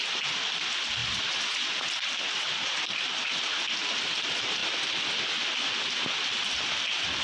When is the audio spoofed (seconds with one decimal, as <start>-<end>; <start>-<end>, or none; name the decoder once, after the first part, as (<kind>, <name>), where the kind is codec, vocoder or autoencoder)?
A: none

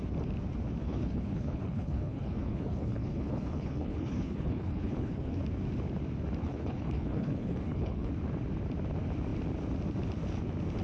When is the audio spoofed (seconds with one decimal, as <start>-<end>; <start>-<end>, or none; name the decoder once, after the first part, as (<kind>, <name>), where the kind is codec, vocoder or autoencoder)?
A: 0.8-5.4 (codec, HILCodec); 6.4-8.1

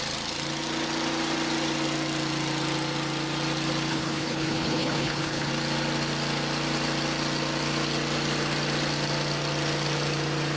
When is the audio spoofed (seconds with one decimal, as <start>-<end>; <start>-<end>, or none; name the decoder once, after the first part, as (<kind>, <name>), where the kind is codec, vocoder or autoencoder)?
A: 3.9-5.5 (codec, HILCodec)

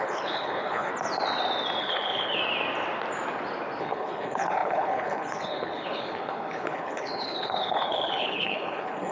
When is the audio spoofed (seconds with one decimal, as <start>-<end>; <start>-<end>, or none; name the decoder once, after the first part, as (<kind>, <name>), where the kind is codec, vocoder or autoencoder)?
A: 0.0-0.9 (codec, HILCodec); 1.8-2.4; 3.8-9.1

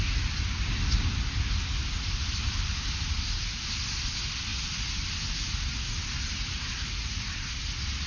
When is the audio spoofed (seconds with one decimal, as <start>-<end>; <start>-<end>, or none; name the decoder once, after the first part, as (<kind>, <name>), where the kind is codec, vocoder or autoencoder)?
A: none

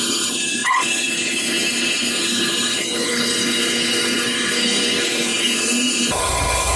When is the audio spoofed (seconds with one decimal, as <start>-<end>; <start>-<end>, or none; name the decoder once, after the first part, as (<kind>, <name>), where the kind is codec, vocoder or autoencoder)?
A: 0.0-6.8 (codec, HILCodec)

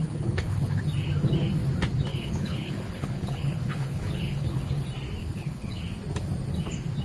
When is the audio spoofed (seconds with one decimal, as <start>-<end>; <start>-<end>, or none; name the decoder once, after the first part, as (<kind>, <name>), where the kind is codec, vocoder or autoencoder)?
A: 0.0-0.8 (codec, HILCodec); 2.1-4.7; 5.2-5.8